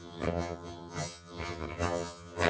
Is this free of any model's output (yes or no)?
no